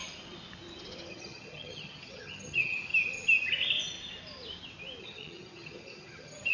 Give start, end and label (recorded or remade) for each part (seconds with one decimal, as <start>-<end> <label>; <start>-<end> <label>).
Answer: 0.0-1.1 recorded; 1.1-2.9 remade; 2.9-5.0 recorded; 5.0-6.5 remade